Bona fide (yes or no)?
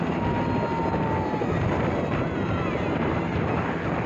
yes